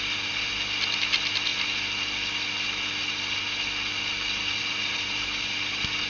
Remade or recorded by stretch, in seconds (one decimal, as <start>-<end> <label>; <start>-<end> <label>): 0.0-6.1 recorded